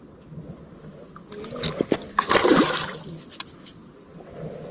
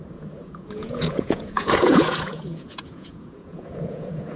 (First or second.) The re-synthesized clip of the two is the second